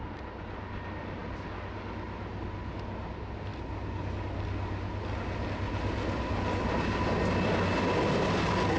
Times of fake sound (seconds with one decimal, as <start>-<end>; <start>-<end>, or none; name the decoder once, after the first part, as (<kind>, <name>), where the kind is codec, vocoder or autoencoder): none